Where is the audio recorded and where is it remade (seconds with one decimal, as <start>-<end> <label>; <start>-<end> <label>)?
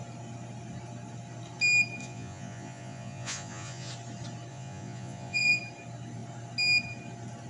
0.0-2.0 recorded; 2.0-3.9 remade; 3.9-4.5 recorded; 4.5-5.6 remade; 5.6-7.5 recorded